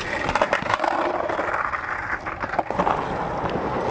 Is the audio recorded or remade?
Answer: recorded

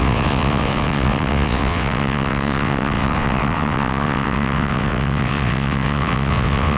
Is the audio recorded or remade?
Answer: remade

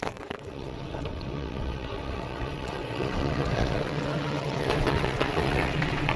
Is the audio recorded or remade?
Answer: remade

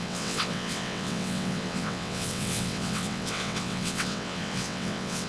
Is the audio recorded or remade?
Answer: remade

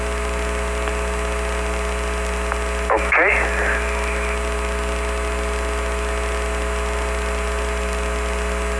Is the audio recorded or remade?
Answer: recorded